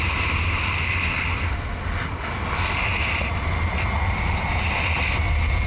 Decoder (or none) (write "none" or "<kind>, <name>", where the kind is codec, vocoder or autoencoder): none